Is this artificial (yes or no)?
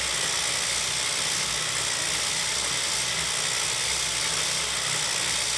no